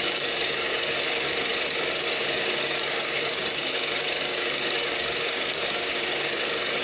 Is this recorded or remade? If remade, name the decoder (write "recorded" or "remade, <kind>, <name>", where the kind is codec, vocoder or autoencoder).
remade, codec, DAC